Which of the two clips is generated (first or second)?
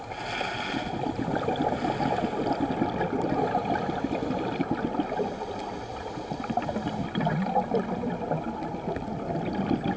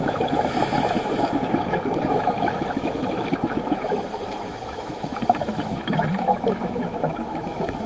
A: second